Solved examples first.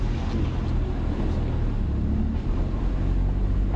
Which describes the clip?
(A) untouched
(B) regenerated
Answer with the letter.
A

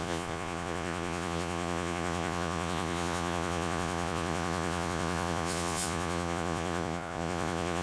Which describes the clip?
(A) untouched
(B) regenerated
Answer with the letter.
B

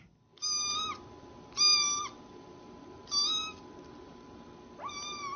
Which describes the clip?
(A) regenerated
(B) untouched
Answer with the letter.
B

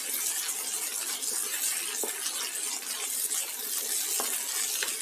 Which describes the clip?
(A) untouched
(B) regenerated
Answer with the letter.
A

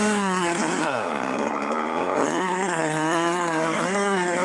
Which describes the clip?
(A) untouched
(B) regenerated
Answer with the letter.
B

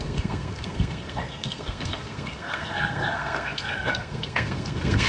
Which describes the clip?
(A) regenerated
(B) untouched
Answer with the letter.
A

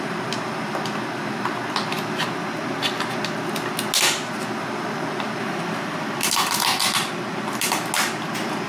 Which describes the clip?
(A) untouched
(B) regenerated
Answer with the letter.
A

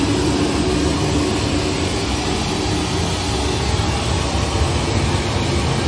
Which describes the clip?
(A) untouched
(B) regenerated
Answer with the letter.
A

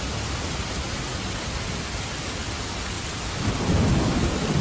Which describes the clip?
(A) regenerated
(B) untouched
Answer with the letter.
B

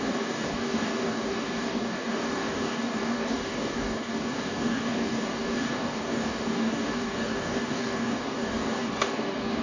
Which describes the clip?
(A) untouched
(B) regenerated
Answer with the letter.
B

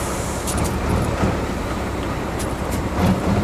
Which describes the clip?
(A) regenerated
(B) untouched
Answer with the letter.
A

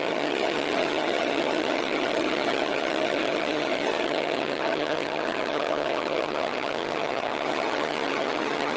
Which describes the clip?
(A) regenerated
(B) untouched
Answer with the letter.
A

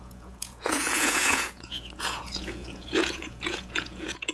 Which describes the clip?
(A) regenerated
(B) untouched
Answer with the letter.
A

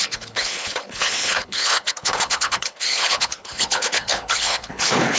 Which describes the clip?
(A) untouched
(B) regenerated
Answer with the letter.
B